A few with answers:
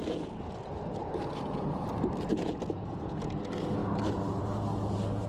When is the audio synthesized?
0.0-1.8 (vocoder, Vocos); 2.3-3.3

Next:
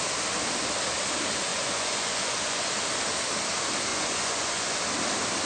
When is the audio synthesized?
1.5-2.7 (vocoder, Vocos); 3.9-4.8

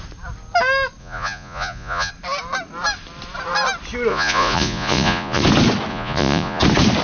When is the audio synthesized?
1.0-2.1 (vocoder, Vocos); 4.1-5.4; 5.9-6.6

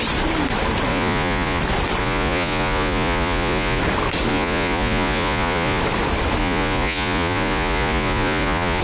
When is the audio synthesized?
0.9-1.6 (vocoder, Vocos); 2.0-3.8; 4.3-5.8; 6.4-8.8

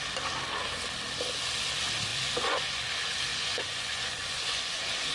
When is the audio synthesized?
2.1-2.9 (vocoder, Vocos); 3.3-5.1

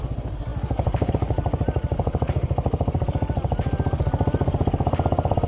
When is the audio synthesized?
none

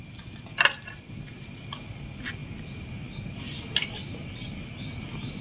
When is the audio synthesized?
none